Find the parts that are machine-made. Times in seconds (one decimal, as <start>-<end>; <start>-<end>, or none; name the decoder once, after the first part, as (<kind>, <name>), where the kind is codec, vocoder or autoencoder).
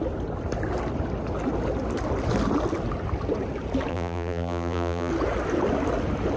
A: 3.9-5.1 (vocoder, BigVGAN v2)